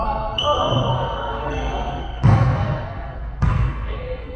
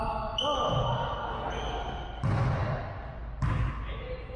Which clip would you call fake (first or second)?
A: first